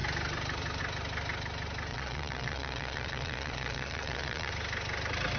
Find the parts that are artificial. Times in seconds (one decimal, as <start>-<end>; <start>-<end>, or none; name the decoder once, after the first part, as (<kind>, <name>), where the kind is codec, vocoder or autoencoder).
1.9-4.5 (vocoder, Vocos)